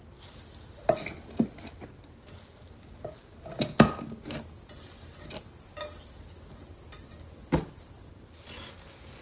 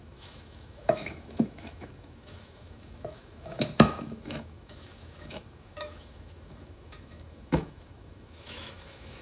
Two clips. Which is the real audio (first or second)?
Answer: first